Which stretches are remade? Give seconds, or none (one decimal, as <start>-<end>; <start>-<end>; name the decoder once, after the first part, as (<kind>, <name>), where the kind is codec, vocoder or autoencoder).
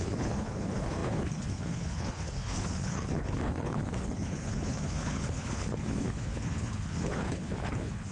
0.0-8.1 (codec, HILCodec)